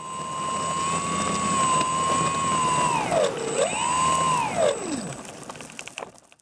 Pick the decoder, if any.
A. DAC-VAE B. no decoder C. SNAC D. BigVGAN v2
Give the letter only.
B